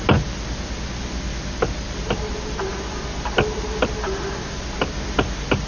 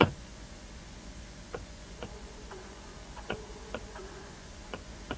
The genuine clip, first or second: first